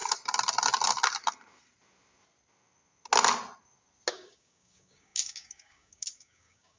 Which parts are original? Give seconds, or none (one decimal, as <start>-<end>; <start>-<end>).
0.0-4.1